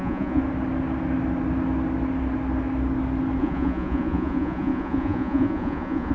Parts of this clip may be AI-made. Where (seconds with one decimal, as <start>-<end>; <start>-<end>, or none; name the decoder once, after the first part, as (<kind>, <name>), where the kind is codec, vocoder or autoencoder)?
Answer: 0.0-0.4 (vocoder, Vocos); 3.4-6.1